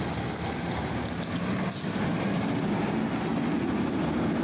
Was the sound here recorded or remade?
recorded